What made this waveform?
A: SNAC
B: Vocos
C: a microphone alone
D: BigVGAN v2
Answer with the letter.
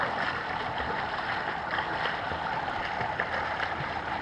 C